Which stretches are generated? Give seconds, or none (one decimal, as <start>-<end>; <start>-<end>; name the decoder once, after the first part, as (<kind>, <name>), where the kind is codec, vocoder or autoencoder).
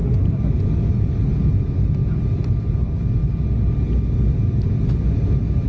none